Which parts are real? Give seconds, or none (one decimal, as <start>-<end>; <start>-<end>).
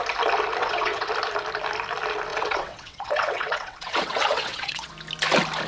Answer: 0.0-0.6; 1.1-2.3; 4.9-5.7